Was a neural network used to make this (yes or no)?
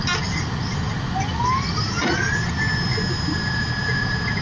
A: no